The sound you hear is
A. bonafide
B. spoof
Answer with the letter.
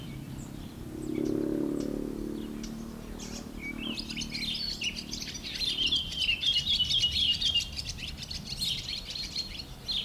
A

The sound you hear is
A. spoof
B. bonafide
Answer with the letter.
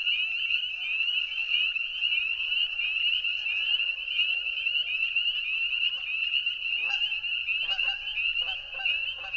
B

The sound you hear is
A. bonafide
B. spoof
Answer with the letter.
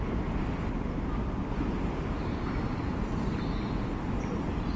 A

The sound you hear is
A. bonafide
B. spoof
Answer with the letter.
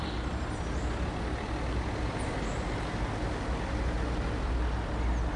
A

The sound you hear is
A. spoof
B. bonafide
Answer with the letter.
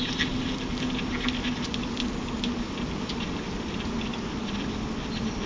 B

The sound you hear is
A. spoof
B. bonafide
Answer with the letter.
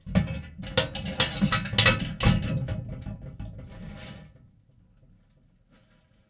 B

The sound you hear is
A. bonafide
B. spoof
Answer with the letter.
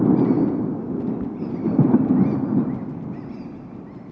A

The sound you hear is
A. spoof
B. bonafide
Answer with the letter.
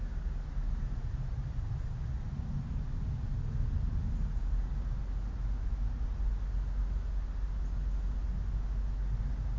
B